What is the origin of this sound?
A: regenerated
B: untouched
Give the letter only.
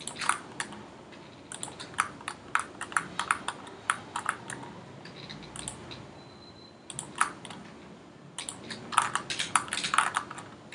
B